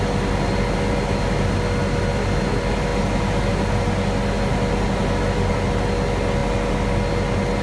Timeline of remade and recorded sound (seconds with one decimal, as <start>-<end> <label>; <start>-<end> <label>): 0.0-7.6 recorded